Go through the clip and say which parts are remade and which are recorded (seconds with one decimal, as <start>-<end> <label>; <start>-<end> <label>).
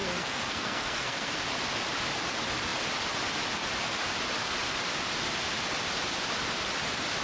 0.0-1.4 remade; 1.4-7.2 recorded